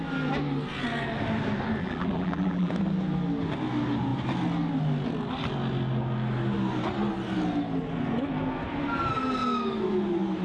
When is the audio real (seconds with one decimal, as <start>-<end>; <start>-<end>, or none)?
0.0-1.8; 2.7-10.4